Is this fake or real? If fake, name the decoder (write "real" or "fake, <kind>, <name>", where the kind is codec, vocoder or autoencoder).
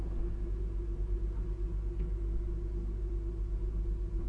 real